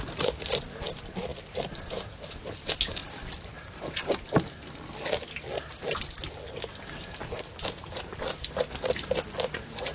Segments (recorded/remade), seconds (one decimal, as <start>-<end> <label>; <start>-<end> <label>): 0.0-9.9 recorded